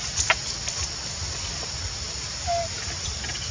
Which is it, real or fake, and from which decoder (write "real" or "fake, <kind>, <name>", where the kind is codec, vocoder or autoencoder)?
real